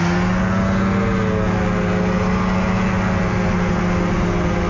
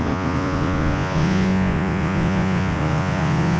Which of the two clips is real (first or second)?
first